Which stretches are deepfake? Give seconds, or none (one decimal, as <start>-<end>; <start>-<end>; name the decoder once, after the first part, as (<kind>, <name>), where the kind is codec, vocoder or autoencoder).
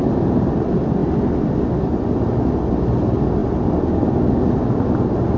none